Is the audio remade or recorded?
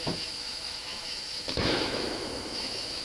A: remade